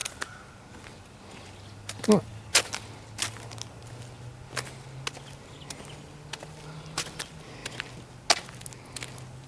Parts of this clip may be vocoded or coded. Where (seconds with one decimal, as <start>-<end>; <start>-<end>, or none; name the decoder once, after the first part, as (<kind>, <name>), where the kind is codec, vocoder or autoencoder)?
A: none